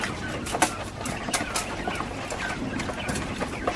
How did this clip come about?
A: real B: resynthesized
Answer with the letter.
B